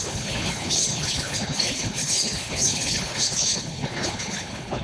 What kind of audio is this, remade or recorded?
remade